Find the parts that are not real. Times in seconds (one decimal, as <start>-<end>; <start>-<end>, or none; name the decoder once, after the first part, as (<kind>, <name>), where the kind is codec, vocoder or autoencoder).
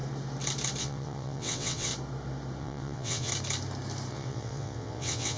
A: 0.8-1.9 (vocoder, WaveNeXt); 2.6-3.3; 4.1-5.4